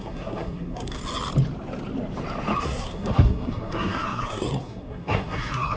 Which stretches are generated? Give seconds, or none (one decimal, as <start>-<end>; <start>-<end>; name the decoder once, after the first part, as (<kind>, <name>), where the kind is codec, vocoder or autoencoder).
0.0-1.0 (codec, SNAC); 2.6-5.8